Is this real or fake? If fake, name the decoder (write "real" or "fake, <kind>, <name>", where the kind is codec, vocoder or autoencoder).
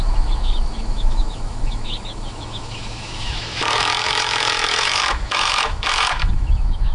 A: fake, autoencoder, DAC-VAE